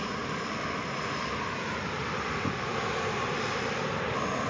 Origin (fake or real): real